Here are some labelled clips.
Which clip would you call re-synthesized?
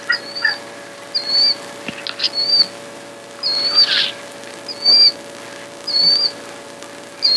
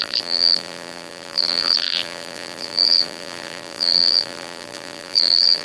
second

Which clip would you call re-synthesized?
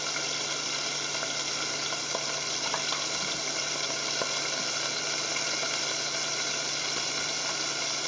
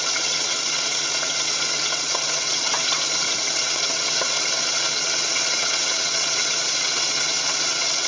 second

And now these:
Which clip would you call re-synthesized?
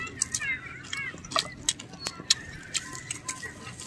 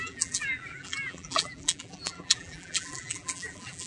second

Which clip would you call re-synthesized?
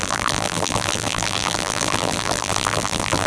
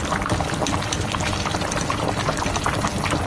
first